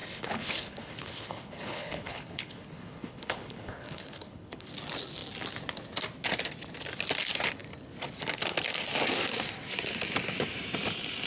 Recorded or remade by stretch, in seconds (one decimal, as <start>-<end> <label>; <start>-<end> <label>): 0.0-4.7 remade; 4.7-11.3 recorded